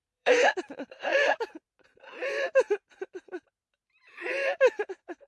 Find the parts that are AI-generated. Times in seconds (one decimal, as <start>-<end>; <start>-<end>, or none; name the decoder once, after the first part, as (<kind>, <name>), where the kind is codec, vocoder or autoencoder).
0.0-1.1 (vocoder, BigVGAN v2); 4.0-5.3